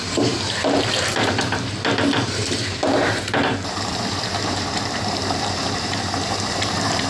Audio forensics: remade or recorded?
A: remade